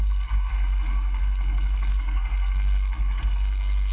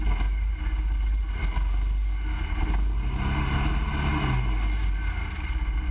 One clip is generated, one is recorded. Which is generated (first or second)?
first